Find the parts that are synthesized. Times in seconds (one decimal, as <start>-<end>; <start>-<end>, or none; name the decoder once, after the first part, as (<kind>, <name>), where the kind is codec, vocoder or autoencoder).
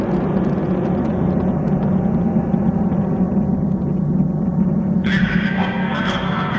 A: 5.2-6.6 (codec, SNAC)